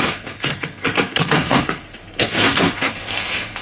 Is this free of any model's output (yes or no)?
no